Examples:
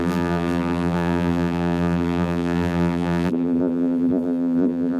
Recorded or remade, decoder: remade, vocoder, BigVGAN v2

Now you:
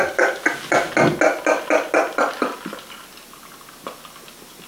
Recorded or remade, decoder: recorded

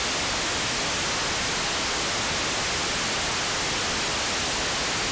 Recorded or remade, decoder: recorded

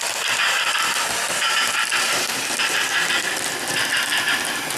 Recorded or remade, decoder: remade, vocoder, BigVGAN v2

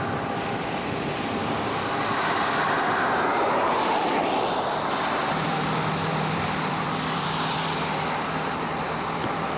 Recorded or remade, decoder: remade, vocoder, BigVGAN v2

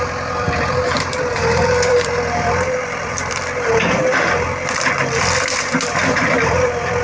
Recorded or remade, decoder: remade, vocoder, BigVGAN v2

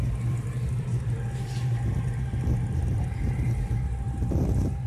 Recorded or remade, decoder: remade, vocoder, BigVGAN v2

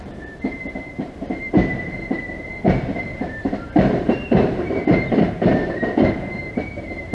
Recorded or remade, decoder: remade, vocoder, BigVGAN v2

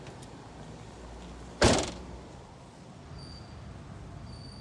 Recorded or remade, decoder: recorded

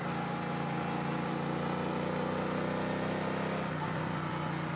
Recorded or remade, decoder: recorded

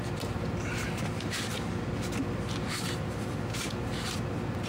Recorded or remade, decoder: recorded